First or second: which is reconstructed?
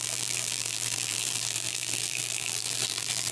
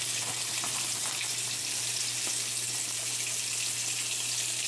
first